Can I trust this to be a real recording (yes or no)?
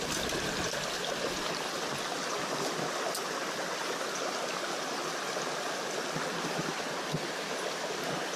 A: yes